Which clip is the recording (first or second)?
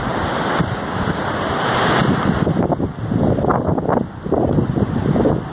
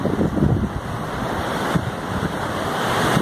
first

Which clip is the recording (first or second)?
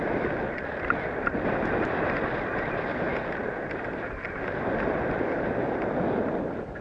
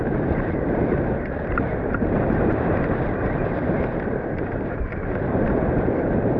first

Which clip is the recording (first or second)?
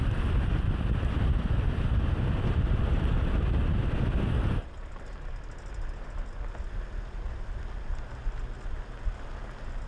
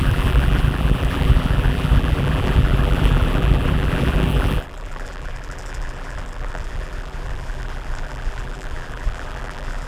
first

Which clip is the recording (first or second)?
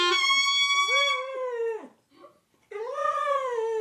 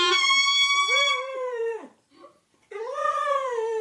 first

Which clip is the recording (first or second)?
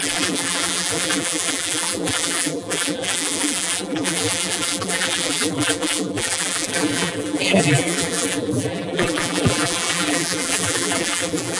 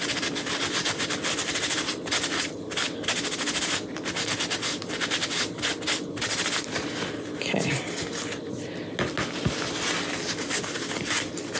second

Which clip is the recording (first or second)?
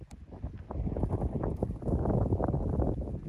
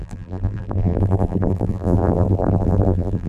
first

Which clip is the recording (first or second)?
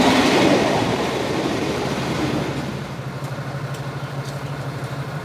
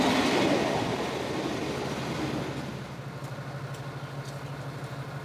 second